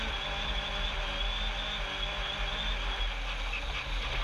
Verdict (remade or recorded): recorded